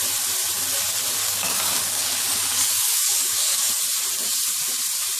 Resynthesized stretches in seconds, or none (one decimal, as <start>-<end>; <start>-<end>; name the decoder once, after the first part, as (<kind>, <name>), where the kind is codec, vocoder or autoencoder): 1.2-3.7 (codec, DAC)